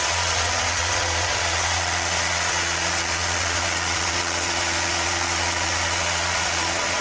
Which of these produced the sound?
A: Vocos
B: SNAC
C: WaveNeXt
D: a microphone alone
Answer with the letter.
A